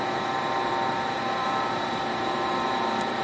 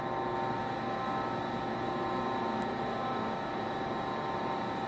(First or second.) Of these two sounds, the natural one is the second